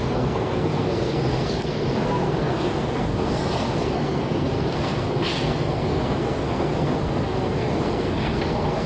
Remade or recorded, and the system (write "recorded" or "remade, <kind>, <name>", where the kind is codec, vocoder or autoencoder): remade, codec, SNAC